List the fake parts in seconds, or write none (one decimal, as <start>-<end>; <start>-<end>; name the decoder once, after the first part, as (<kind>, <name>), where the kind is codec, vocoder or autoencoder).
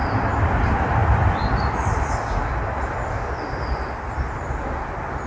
0.0-5.3 (vocoder, BigVGAN v2)